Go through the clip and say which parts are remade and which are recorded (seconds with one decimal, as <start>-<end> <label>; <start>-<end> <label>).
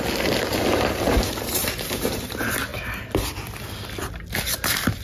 0.0-1.6 recorded; 1.6-2.2 remade; 2.2-5.0 recorded